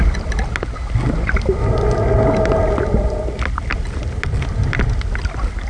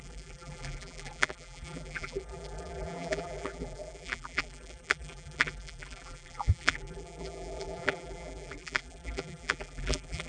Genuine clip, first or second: first